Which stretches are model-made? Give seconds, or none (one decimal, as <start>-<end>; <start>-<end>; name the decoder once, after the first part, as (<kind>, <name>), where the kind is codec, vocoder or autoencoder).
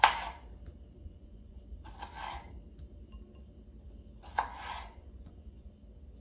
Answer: 1.0-1.6 (vocoder, Vocos); 4.5-5.7